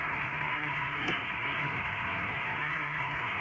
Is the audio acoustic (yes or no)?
no